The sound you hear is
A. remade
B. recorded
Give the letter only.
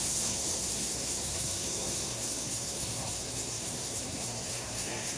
A